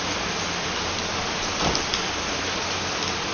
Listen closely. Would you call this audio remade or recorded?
recorded